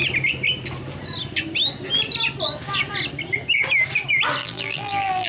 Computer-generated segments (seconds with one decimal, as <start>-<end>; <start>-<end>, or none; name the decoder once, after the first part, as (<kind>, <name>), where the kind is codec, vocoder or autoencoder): 4.4-5.3 (vocoder, BigVGAN v2)